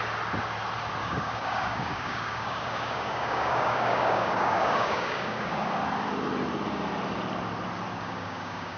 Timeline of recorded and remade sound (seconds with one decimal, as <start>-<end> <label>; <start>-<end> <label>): 0.0-1.0 recorded; 1.0-5.8 remade; 5.8-7.9 recorded; 7.9-8.8 remade